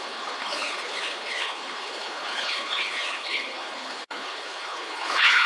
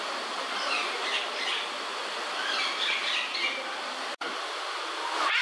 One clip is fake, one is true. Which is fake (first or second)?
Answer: first